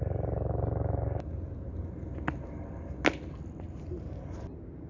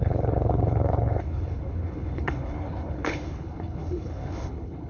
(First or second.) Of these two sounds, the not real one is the second